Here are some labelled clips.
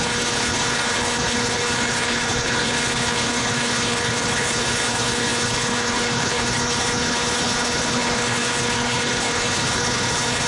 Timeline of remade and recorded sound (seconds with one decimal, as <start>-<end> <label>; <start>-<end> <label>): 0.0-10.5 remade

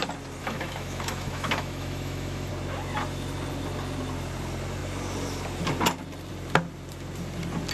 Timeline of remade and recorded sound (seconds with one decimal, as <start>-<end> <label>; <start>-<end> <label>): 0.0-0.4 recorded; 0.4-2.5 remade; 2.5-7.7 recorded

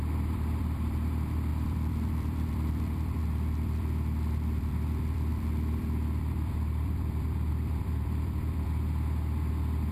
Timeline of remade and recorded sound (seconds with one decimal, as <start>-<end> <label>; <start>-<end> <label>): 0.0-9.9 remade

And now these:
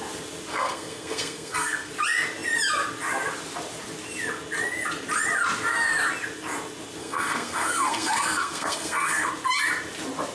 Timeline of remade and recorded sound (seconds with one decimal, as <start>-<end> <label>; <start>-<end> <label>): 0.0-0.5 recorded; 0.5-1.9 remade; 1.9-7.0 recorded; 7.0-9.3 remade; 9.3-10.3 recorded